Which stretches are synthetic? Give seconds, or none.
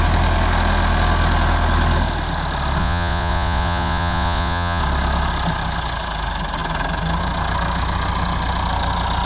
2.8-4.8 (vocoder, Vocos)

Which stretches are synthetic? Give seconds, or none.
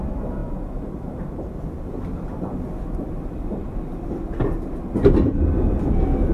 0.0-6.3 (vocoder, BigVGAN v2)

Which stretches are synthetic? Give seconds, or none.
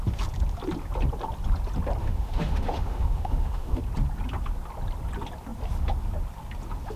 2.0-3.8 (autoencoder, DAC-VAE)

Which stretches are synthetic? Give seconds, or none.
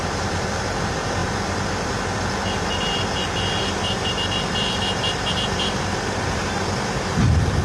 0.0-7.6 (vocoder, BigVGAN v2)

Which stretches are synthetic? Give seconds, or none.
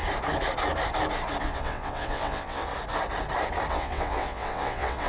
1.4-2.7 (vocoder, WaveNeXt); 3.7-5.1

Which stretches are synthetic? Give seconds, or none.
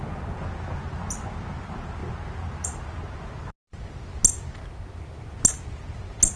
none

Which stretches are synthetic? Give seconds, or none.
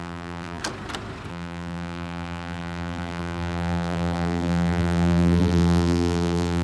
0.0-0.6 (vocoder, BigVGAN v2); 1.3-6.6